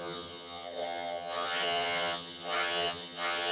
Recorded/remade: remade